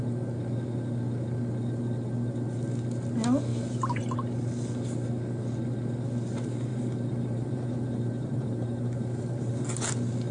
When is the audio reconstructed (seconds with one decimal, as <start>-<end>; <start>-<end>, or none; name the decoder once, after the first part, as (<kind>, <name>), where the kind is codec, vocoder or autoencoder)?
3.5-4.0 (vocoder, BigVGAN v2); 6.7-9.5

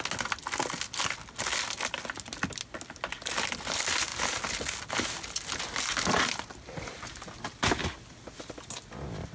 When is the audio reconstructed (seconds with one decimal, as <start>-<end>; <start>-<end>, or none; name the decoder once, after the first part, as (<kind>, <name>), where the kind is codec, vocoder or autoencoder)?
none

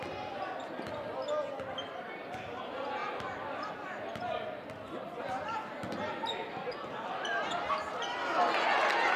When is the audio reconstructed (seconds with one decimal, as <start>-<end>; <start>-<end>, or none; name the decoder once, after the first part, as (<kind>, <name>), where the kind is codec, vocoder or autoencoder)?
none